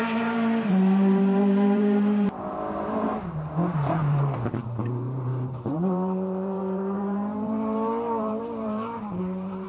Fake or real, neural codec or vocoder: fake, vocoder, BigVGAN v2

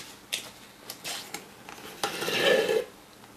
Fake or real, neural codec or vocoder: real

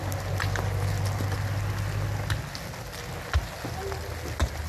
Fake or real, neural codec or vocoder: real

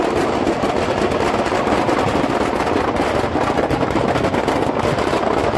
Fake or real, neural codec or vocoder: real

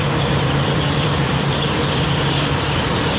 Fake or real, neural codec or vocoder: fake, vocoder, BigVGAN v2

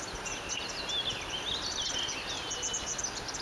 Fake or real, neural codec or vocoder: real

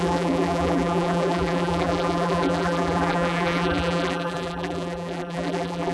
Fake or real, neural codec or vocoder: fake, vocoder, BigVGAN v2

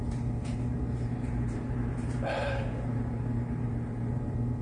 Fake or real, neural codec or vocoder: fake, vocoder, BigVGAN v2